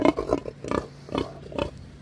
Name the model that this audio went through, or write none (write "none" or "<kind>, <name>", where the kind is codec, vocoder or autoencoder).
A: none